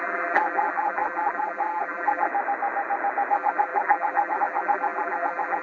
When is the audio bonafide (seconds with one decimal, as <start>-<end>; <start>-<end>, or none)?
2.3-3.3